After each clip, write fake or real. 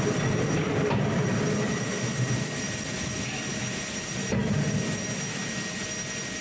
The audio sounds real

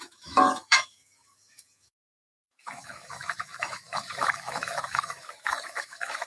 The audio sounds fake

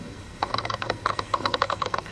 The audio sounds fake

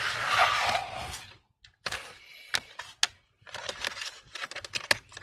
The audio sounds real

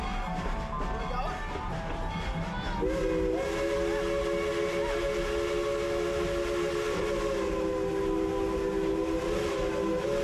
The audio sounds real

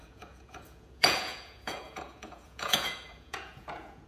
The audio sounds fake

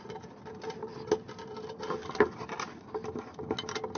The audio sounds real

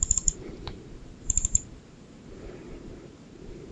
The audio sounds fake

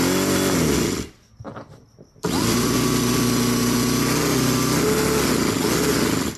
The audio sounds real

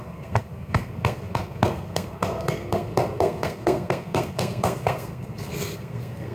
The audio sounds fake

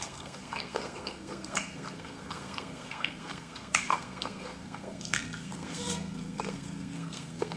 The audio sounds fake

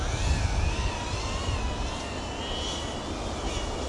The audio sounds real